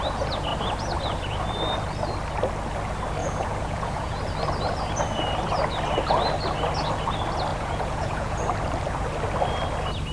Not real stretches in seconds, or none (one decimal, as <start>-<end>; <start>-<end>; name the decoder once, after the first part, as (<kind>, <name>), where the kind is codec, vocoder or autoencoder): 3.2-4.2 (vocoder, Vocos); 7.5-8.4